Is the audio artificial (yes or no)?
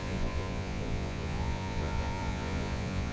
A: yes